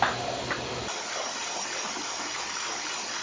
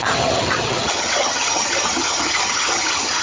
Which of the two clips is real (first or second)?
first